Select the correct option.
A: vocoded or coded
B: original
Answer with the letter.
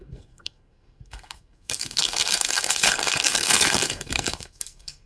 A